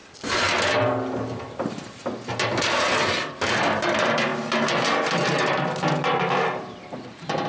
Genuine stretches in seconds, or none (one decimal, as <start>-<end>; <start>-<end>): 0.0-2.6; 4.3-5.6